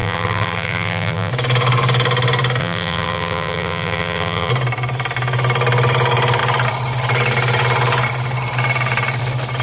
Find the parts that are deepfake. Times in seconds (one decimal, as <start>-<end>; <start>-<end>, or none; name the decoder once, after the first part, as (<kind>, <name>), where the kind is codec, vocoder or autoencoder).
0.0-1.3 (vocoder, BigVGAN v2); 2.6-4.5